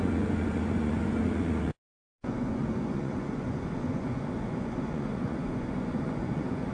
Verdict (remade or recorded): remade